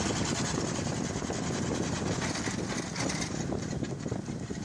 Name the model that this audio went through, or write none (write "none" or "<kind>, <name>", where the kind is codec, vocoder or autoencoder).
none